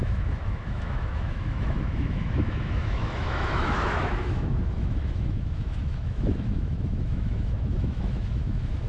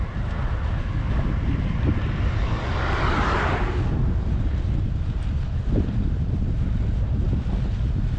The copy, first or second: first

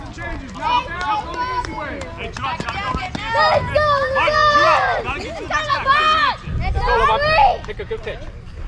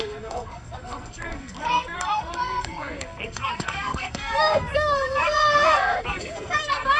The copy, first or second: second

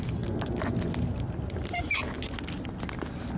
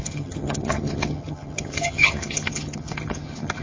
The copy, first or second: second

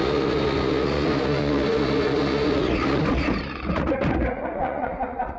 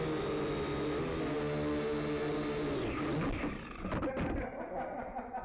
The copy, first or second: first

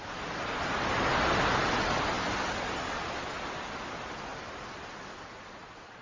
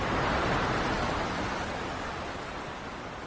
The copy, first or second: second